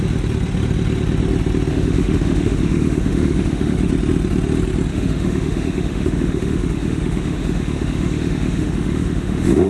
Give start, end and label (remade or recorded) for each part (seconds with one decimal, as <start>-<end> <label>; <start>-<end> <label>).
0.0-1.7 recorded; 1.7-3.9 remade; 3.9-4.9 recorded; 4.9-9.7 remade